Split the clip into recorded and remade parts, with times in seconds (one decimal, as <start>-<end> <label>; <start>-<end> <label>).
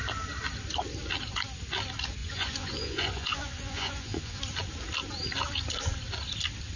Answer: 0.0-2.2 recorded; 2.2-4.4 remade; 4.4-6.8 recorded